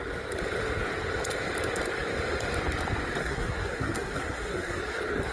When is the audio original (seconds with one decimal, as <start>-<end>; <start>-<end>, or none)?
0.0-3.2; 4.8-5.3